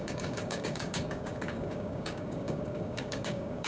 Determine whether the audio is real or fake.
fake